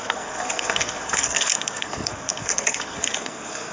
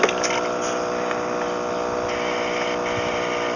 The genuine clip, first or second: second